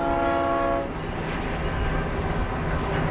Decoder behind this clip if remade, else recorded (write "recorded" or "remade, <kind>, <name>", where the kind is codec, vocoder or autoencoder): recorded